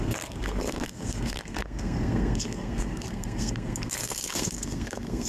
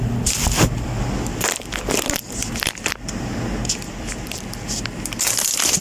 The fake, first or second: first